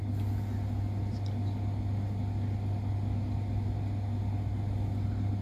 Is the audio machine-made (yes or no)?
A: no